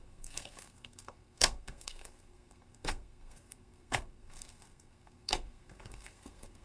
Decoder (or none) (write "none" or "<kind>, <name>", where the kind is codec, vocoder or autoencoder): codec, SNAC